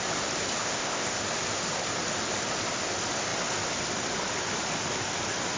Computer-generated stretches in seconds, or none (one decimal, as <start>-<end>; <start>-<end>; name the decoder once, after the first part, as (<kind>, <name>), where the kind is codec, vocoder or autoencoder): 0.6-1.2 (codec, ZipCodec)